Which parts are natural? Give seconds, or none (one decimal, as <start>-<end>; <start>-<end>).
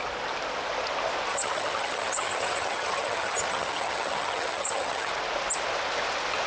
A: 0.0-1.3; 5.1-6.5